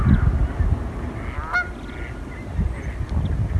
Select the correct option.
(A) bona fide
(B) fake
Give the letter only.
A